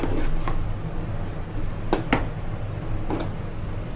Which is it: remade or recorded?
recorded